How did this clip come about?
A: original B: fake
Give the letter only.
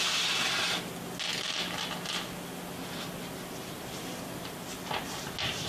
A